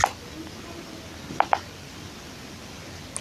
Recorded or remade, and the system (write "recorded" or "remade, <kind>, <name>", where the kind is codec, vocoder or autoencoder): recorded